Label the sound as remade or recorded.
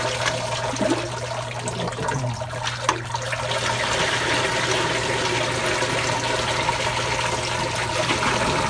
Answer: recorded